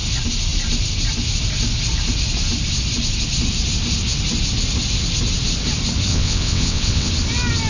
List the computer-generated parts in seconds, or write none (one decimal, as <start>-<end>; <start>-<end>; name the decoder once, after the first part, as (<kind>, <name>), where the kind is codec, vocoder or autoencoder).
6.1-7.1 (vocoder, WaveNeXt)